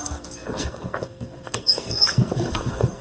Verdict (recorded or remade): remade